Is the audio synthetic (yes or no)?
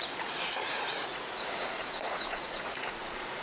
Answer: yes